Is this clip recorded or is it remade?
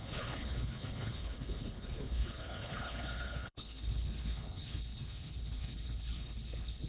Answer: remade